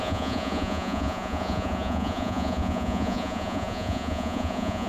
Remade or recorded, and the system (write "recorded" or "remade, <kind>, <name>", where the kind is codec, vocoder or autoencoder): remade, vocoder, Vocos